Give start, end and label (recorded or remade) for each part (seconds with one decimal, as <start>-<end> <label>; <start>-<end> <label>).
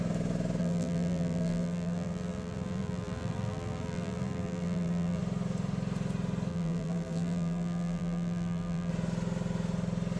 0.0-0.6 recorded; 0.6-5.2 remade; 5.2-6.5 recorded; 6.5-8.9 remade; 8.9-10.2 recorded